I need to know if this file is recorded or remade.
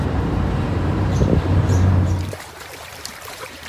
remade